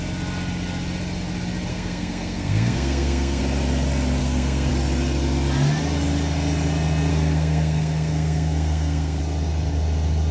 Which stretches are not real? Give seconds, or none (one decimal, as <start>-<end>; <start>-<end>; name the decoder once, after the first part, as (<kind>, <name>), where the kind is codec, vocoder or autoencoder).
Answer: 1.7-3.4 (codec, SNAC); 4.2-4.7; 7.1-9.2

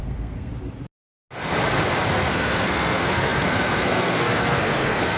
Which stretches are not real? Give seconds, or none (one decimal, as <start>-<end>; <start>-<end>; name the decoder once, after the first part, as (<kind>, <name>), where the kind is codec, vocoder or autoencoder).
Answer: 0.0-0.5 (codec, SNAC); 2.1-5.2

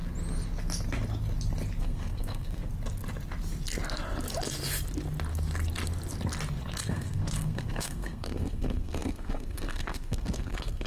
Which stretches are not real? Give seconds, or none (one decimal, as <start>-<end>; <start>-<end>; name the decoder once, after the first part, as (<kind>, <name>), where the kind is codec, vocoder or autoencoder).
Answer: 1.8-2.7 (codec, SNAC); 6.8-10.9

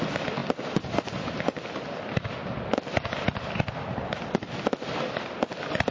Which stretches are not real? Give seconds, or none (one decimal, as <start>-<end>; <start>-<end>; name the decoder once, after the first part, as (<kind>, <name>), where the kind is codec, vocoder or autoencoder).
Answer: none

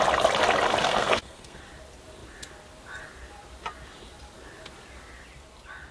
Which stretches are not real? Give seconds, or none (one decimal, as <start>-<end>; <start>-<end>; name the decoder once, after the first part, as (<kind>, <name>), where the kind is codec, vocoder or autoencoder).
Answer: 0.8-1.6 (codec, SNAC)

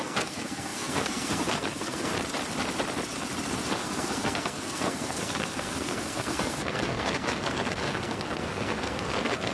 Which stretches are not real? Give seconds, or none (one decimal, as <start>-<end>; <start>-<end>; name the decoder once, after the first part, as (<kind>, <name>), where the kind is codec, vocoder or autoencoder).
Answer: 0.0-2.1 (codec, SNAC); 3.7-9.5

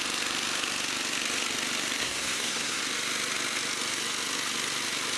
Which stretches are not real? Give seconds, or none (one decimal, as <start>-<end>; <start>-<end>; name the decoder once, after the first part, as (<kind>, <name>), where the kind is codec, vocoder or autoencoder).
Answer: 2.0-2.8 (codec, SNAC)